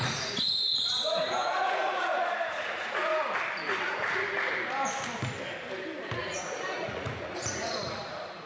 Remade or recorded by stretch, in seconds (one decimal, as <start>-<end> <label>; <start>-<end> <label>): 0.0-3.1 remade; 3.1-6.2 recorded; 6.2-8.5 remade

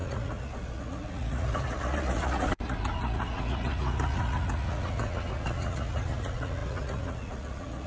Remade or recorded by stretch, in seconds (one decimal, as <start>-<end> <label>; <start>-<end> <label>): 0.0-7.9 remade

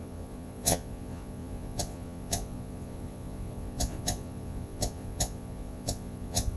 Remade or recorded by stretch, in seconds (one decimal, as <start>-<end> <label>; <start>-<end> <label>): 0.0-6.6 remade

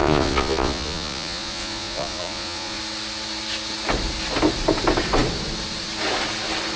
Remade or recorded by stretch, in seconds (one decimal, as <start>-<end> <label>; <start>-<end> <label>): 0.0-2.8 remade; 2.8-6.8 recorded

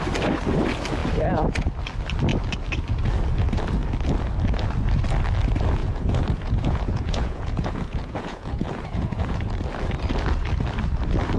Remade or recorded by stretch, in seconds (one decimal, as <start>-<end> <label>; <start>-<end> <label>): 0.0-5.8 recorded; 5.8-9.4 remade; 9.4-11.4 recorded

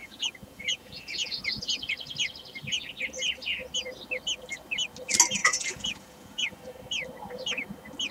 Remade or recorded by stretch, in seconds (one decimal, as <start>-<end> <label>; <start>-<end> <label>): 0.0-1.9 remade; 1.9-5.4 recorded; 5.4-6.6 remade; 6.6-8.1 recorded